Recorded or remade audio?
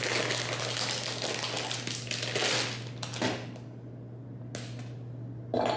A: recorded